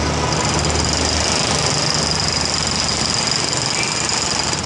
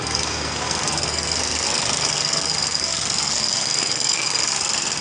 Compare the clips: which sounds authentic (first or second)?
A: first